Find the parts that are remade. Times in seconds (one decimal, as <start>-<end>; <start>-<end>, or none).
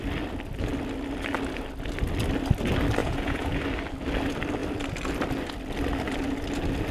3.0-3.6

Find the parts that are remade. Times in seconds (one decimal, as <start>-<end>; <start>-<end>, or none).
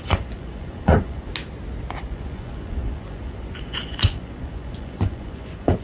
0.0-1.3; 2.0-5.8